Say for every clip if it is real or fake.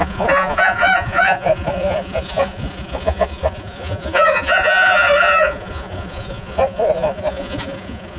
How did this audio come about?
fake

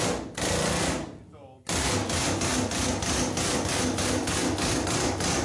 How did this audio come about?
real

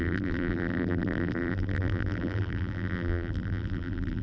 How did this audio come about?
fake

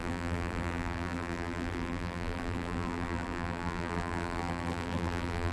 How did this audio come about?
fake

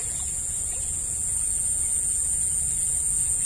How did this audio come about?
fake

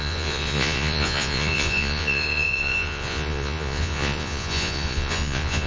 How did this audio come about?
fake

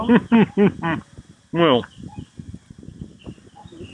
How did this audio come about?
real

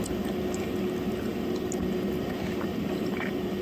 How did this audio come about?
real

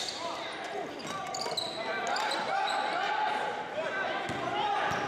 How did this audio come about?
real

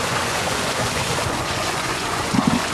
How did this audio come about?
fake